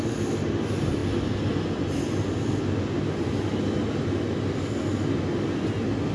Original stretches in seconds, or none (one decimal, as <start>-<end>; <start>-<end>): 0.0-6.1